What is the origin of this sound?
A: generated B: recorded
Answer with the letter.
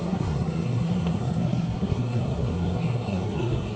A